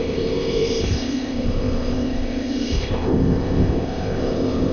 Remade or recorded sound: remade